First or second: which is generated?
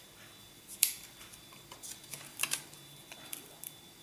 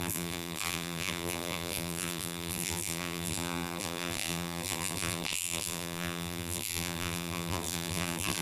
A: second